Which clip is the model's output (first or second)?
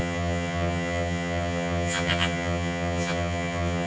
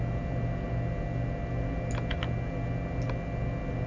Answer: first